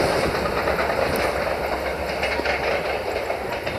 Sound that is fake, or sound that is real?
real